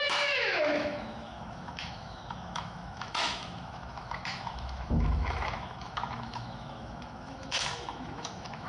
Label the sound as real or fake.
fake